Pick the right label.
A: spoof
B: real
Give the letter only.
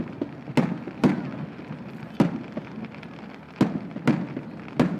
B